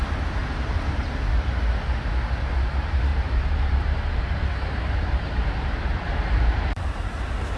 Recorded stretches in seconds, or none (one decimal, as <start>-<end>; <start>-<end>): 0.0-0.4; 1.6-3.1